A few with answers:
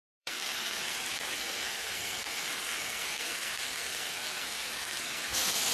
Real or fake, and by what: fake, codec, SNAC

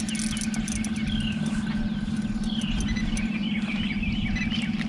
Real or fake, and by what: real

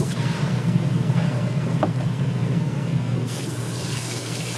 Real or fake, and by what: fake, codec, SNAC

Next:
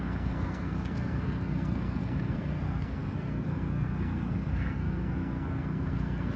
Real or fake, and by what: fake, codec, SNAC